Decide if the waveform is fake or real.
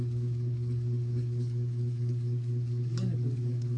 fake